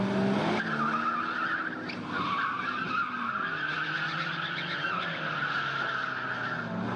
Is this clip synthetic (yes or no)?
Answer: no